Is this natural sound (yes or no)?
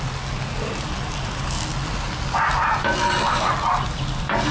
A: yes